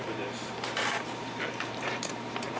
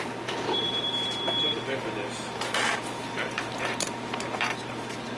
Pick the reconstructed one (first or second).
first